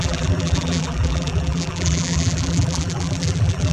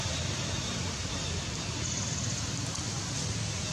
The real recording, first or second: second